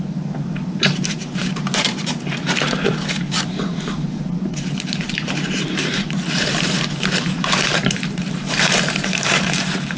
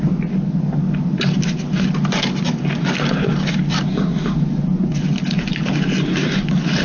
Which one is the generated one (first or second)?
first